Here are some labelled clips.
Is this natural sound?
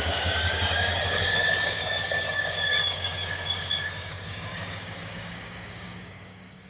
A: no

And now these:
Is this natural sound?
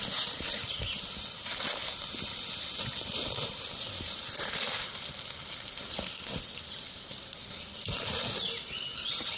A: yes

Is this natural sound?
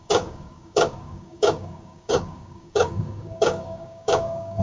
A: no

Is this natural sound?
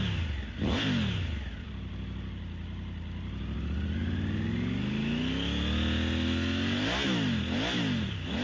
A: yes